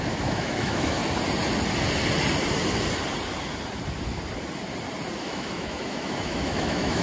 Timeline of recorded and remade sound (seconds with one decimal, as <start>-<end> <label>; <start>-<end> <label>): 0.0-1.0 remade; 1.0-5.2 recorded; 5.2-7.0 remade